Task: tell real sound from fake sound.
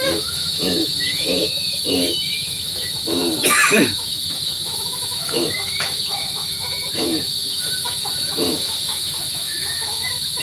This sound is fake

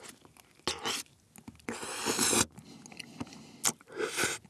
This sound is real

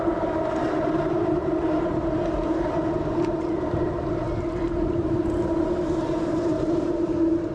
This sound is fake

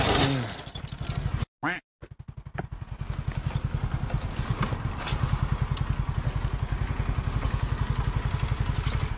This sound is real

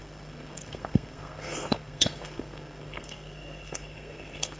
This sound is fake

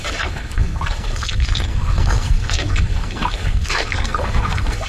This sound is fake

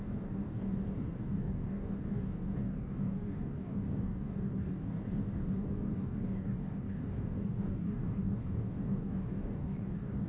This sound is fake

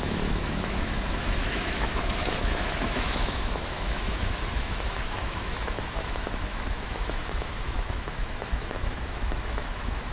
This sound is fake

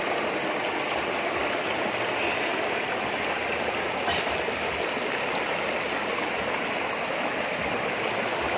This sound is real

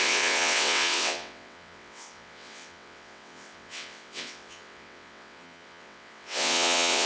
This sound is fake